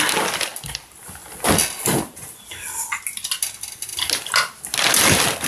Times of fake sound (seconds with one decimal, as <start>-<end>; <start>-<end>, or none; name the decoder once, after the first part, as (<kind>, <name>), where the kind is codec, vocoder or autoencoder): none